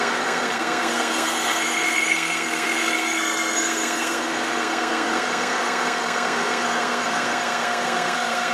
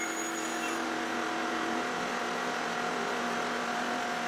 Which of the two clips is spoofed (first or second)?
first